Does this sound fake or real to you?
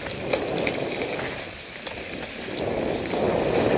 real